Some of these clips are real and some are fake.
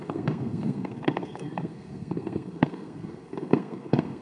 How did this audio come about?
fake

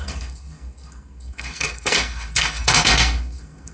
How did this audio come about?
fake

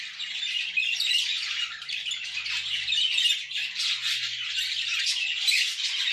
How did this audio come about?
real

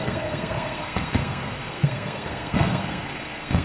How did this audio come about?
fake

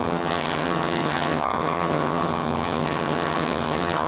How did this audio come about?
fake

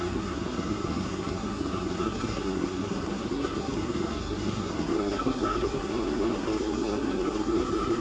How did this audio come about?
fake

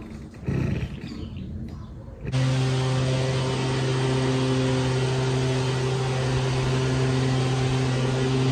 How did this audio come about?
real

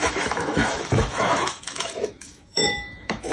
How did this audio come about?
fake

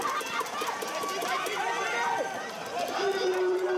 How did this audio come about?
fake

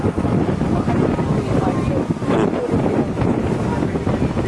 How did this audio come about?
real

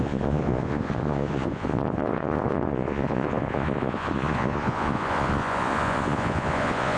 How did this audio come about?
fake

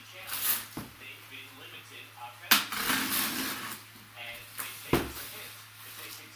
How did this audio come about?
real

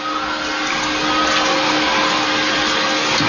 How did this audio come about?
real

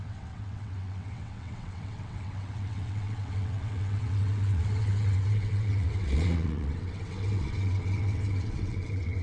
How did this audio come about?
fake